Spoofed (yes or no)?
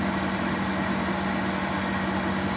no